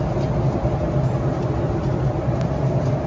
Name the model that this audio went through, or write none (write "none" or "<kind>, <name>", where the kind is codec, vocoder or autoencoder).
none